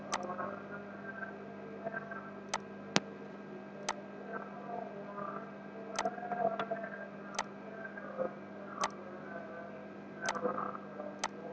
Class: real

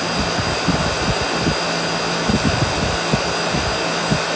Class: real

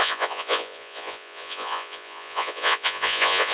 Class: fake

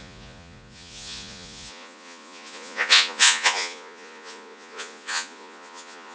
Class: fake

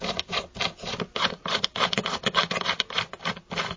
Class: fake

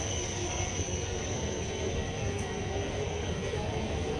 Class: fake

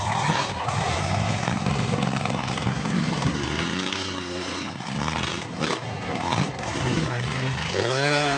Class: fake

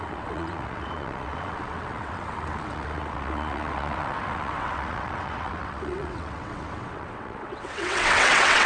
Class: fake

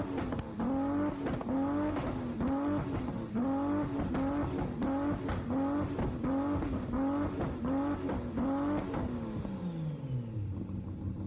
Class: real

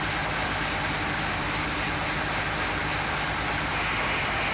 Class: real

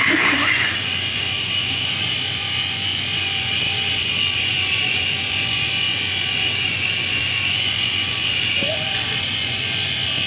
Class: fake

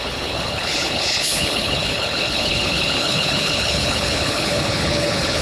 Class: fake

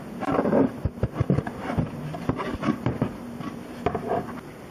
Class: fake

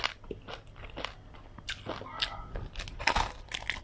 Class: real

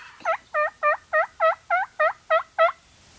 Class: real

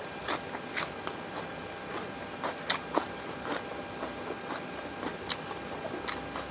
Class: real